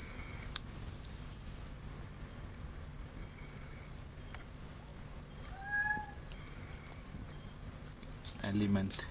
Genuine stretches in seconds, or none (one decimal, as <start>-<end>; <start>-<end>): 0.0-9.1